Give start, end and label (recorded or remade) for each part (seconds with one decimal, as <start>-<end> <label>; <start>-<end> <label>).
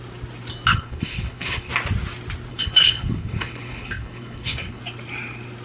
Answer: 0.0-0.7 recorded; 0.7-1.7 remade; 1.7-2.5 recorded; 2.5-4.8 remade; 4.8-5.6 recorded